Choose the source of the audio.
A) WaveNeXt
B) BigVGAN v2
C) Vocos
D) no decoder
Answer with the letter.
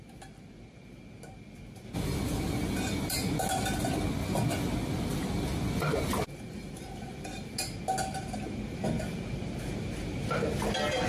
D